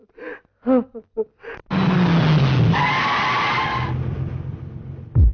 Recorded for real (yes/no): yes